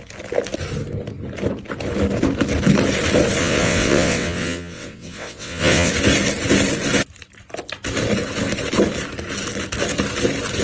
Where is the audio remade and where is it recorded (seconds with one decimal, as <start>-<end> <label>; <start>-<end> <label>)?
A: 0.0-3.4 recorded; 3.4-5.9 remade; 5.9-10.6 recorded